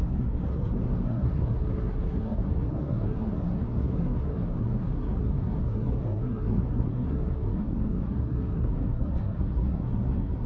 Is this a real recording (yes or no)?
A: no